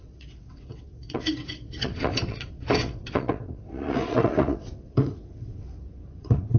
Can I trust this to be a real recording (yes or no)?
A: no